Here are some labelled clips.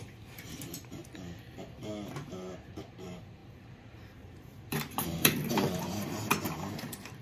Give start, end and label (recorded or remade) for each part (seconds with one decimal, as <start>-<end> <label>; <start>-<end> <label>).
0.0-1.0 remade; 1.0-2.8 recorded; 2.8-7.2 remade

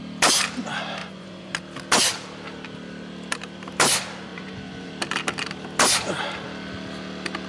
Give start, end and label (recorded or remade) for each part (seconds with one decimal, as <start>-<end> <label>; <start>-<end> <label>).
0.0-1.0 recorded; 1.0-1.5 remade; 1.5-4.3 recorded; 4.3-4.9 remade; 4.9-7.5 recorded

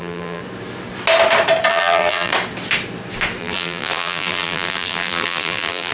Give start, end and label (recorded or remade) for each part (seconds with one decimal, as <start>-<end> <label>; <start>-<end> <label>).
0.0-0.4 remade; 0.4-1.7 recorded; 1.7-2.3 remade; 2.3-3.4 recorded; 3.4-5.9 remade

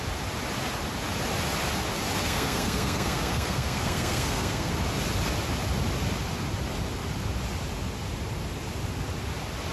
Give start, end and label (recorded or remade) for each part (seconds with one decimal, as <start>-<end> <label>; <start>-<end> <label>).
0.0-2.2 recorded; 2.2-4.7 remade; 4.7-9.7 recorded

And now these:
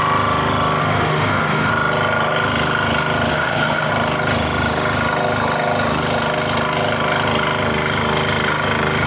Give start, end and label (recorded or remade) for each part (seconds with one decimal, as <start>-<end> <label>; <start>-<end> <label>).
0.0-0.8 recorded; 0.8-1.7 remade; 1.7-3.3 recorded; 3.3-3.9 remade; 3.9-9.1 recorded

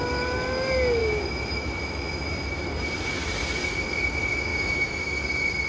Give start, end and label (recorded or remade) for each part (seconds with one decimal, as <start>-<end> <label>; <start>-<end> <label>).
0.0-1.0 recorded; 1.0-2.6 remade; 2.6-4.5 recorded; 4.5-5.1 remade; 5.1-5.7 recorded

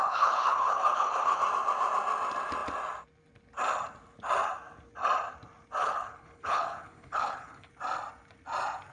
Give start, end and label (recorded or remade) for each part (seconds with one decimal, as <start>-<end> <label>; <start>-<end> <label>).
0.0-1.4 remade; 1.4-5.8 recorded; 5.8-7.7 remade; 7.7-8.9 recorded